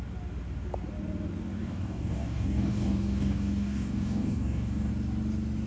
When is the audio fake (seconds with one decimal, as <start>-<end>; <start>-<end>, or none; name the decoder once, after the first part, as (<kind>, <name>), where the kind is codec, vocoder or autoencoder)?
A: 1.5-4.9 (codec, DAC)